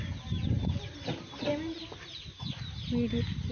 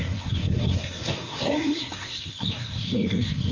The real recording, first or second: first